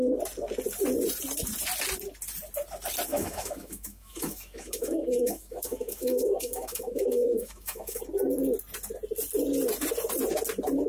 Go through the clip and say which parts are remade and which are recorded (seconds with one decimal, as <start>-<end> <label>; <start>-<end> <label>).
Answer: 0.0-3.1 recorded; 3.1-8.0 remade; 8.0-10.9 recorded